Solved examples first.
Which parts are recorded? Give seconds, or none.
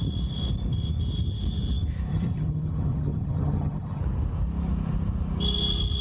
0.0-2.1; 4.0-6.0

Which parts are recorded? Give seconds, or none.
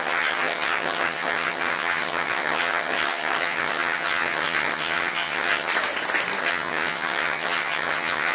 5.7-6.4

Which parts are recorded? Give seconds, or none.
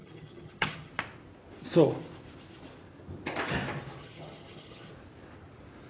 0.9-4.0; 4.9-5.9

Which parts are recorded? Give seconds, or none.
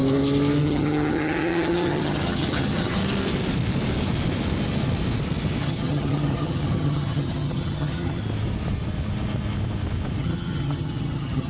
0.0-0.6; 3.0-5.6; 8.2-10.2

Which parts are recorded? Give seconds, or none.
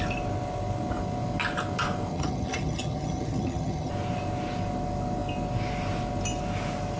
0.0-2.1; 3.9-7.0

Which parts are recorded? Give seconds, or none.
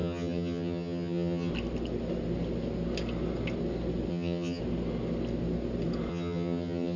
1.5-4.1; 4.6-6.1